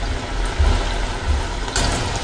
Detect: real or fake real